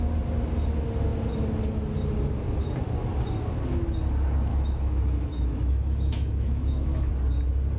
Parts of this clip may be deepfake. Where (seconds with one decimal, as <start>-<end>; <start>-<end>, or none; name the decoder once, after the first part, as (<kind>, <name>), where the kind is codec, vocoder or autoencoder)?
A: 4.5-7.1 (autoencoder, DAC-VAE)